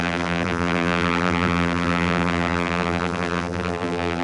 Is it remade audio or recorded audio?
remade